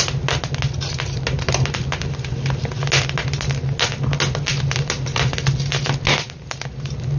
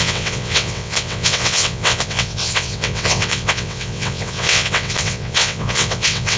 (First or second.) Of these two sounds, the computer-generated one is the second